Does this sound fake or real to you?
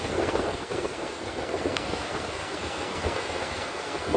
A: fake